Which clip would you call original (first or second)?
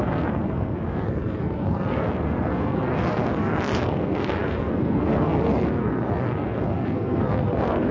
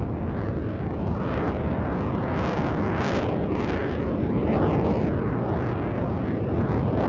second